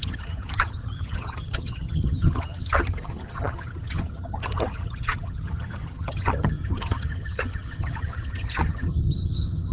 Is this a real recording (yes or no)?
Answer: no